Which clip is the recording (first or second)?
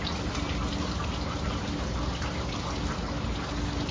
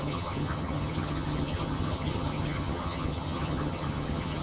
first